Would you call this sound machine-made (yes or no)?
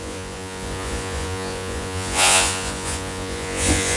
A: yes